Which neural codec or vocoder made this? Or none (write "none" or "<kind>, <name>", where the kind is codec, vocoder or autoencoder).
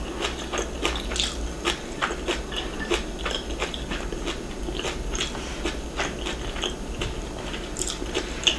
none